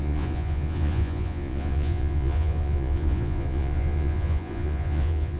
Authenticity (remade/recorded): remade